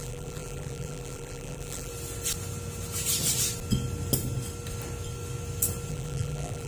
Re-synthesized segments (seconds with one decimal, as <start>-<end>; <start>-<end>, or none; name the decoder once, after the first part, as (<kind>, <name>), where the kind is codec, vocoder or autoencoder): 0.0-1.9 (vocoder, BigVGAN v2); 5.9-6.7